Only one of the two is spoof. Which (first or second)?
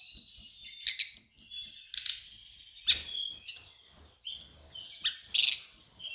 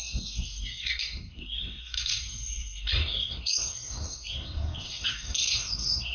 second